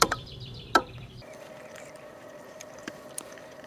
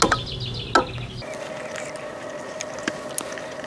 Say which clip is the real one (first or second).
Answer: second